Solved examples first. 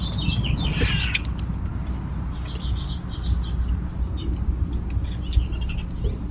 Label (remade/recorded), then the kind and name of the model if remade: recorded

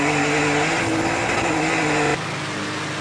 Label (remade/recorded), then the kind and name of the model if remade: recorded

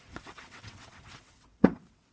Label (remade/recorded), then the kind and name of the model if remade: remade, vocoder, WaveNeXt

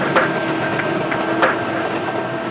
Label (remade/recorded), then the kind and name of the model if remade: recorded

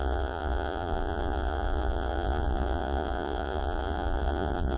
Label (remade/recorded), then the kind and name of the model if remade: remade, vocoder, Vocos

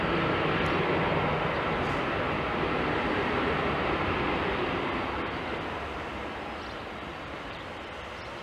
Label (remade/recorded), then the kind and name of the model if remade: recorded